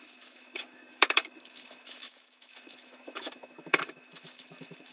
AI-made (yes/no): yes